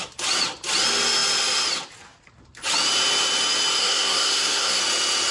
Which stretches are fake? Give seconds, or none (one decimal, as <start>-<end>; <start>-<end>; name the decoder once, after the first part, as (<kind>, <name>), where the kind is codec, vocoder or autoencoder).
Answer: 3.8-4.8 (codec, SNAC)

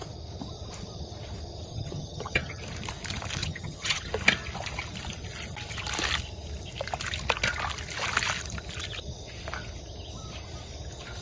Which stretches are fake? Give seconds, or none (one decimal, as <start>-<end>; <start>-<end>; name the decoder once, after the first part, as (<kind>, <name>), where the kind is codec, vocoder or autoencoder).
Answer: 1.7-2.6 (vocoder, HiFi-GAN); 3.4-4.1

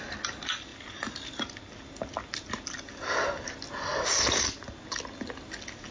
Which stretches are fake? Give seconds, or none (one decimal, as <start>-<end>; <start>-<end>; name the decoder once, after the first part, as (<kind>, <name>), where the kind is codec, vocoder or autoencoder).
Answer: none

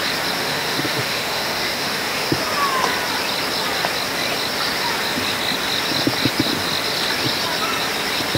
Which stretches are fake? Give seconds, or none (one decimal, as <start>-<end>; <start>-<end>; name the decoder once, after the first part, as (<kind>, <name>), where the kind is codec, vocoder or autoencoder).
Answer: 0.4-2.4 (autoencoder, DAC-VAE)

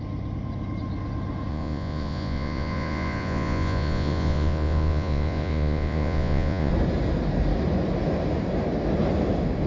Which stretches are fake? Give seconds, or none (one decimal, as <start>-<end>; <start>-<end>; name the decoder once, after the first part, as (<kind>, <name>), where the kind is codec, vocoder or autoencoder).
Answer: 1.5-6.7 (vocoder, Vocos)

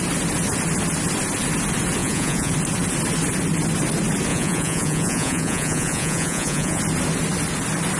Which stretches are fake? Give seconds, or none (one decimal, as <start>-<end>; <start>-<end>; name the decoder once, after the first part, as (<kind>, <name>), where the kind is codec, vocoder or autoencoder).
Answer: 2.0-2.5 (vocoder, Vocos); 4.3-6.8

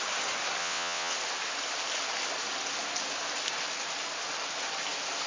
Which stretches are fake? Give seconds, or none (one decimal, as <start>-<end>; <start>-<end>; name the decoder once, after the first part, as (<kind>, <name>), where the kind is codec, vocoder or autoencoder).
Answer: 0.6-1.1 (vocoder, WaveNeXt)

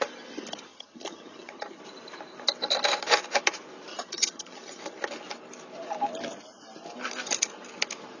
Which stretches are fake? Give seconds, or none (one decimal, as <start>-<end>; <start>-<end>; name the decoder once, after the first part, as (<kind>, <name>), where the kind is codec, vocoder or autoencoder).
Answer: 0.7-1.8 (vocoder, HiFi-GAN); 3.9-4.8